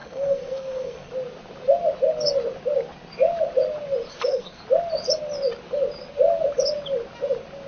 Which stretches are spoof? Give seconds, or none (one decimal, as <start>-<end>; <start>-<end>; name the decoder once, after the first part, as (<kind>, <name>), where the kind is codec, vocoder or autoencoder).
0.0-1.1 (codec, SNAC); 4.1-4.6